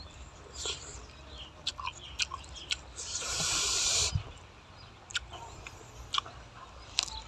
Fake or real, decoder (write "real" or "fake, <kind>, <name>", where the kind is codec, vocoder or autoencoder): real